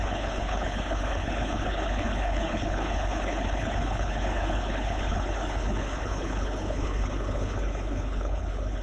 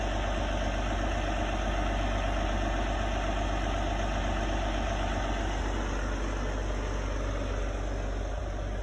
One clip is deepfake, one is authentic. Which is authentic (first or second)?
second